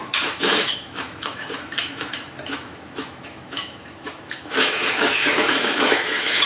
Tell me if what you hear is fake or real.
fake